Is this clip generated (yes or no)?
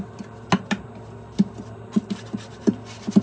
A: no